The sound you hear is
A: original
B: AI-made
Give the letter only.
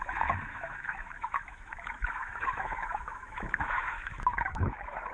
B